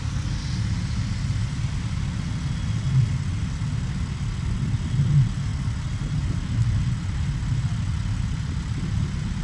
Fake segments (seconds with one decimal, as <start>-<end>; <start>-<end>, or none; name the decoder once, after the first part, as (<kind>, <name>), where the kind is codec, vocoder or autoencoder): none